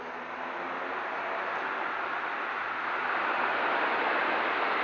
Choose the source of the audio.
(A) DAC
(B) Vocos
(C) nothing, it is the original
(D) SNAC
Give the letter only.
C